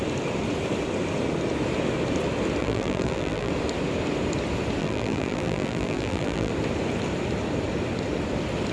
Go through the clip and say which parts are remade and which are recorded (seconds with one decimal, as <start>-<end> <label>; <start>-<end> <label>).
0.0-2.6 recorded; 2.6-3.5 remade; 3.5-4.8 recorded; 4.8-6.5 remade; 6.5-8.7 recorded

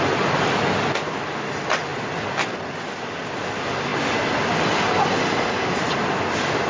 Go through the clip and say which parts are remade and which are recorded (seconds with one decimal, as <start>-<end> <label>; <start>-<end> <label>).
0.0-6.7 recorded

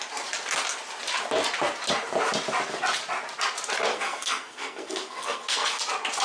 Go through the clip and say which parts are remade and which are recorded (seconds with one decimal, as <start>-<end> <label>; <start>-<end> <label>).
0.0-3.9 recorded; 3.9-5.8 remade; 5.8-6.2 recorded

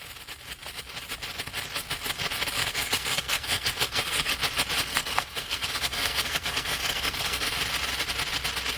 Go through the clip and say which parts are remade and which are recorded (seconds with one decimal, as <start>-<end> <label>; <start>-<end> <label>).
0.0-2.6 recorded; 2.6-4.3 remade; 4.3-4.9 recorded; 4.9-7.5 remade; 7.5-8.8 recorded